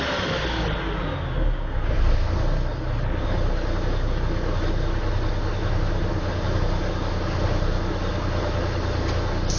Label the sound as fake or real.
real